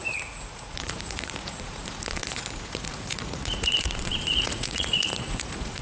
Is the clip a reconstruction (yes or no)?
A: yes